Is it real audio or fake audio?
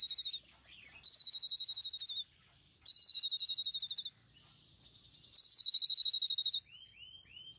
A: real